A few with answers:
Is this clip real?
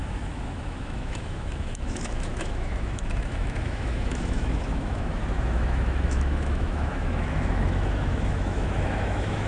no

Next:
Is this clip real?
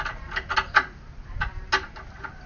yes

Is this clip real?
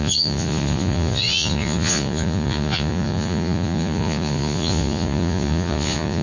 no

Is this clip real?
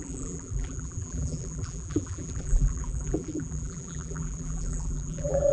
no